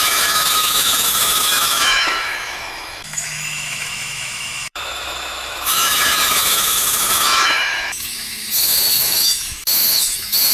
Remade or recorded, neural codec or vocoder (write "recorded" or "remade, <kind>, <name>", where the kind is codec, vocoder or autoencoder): remade, autoencoder, DAC-VAE